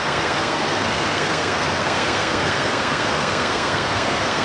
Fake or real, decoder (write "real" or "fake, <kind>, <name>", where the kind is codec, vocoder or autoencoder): fake, codec, SNAC